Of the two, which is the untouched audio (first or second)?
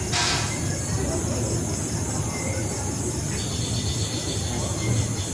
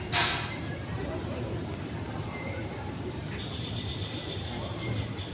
first